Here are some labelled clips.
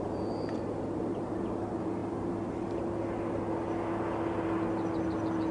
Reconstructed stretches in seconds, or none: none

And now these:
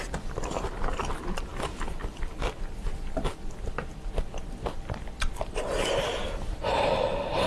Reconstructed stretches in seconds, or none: none

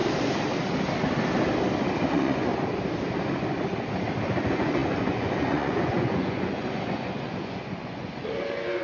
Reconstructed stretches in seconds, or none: 2.1-2.5 (vocoder, Vocos); 4.3-8.8

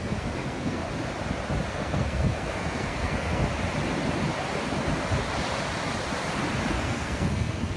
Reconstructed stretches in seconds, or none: 0.0-0.8 (codec, SNAC); 1.7-3.5; 6.7-7.8

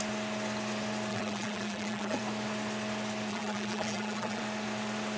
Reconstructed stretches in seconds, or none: 1.1-2.2 (vocoder, BigVGAN v2); 3.3-4.4

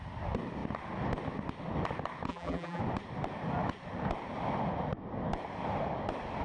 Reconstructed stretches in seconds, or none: 2.3-2.8 (vocoder, BigVGAN v2)

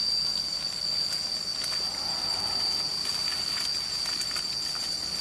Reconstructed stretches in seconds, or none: none